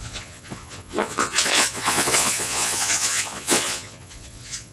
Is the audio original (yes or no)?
no